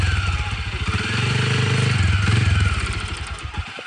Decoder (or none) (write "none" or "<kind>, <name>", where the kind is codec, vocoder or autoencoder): none